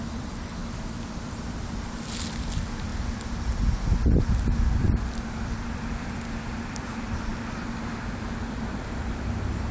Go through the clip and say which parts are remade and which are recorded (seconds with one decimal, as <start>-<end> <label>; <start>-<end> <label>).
0.0-0.6 remade; 0.6-1.2 recorded; 1.2-2.9 remade; 2.9-5.5 recorded; 5.5-7.3 remade; 7.3-8.2 recorded; 8.2-9.7 remade